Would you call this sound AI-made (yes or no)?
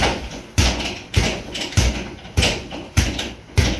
yes